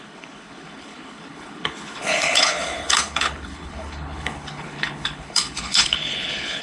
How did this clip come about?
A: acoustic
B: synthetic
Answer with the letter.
B